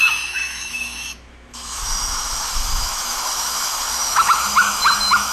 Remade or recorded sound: remade